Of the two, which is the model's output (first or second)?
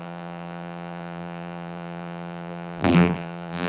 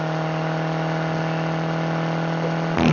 first